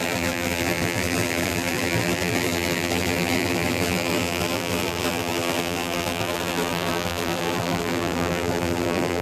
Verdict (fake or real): fake